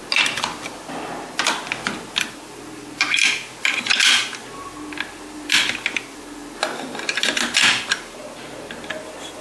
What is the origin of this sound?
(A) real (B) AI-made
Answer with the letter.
A